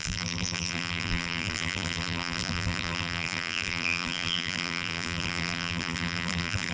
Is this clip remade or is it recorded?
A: remade